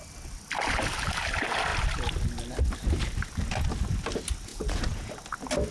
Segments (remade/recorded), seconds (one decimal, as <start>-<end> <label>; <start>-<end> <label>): 0.0-4.5 recorded; 4.5-5.1 remade; 5.1-5.7 recorded